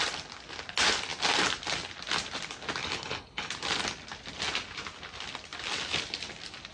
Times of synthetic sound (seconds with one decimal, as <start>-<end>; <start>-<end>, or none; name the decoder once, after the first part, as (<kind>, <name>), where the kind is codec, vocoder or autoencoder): 2.8-3.5 (codec, HILCodec)